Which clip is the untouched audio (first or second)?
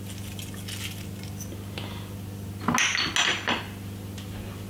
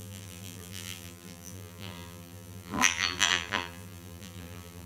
first